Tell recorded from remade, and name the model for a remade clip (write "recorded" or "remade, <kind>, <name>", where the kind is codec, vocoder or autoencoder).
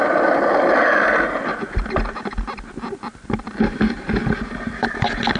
recorded